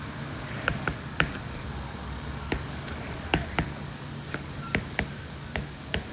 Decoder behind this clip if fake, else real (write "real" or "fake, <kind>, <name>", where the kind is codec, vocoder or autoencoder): fake, codec, DAC